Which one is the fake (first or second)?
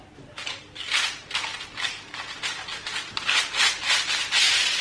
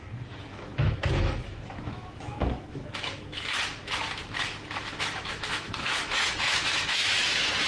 second